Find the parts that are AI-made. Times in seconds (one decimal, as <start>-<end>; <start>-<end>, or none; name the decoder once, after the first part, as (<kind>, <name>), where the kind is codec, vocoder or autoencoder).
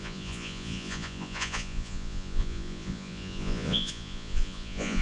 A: 0.0-5.0 (vocoder, Vocos)